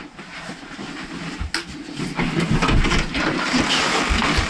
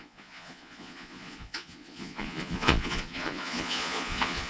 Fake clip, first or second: second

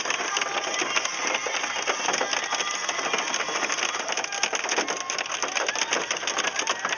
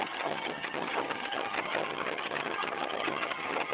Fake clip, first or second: second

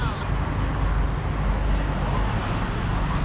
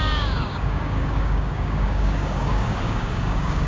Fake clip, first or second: second